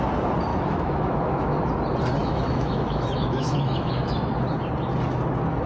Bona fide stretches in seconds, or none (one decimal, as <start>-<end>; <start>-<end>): 0.0-0.5; 1.7-2.2; 4.3-5.7